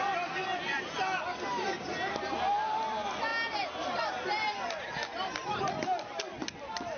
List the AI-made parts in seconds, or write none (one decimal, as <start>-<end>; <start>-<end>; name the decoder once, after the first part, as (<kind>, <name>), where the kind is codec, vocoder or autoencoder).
none